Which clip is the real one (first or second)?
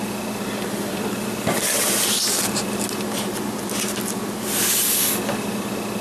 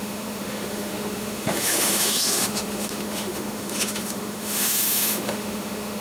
first